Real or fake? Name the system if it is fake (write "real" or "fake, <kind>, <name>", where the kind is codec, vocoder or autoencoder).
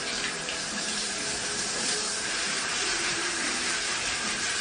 fake, vocoder, BigVGAN v2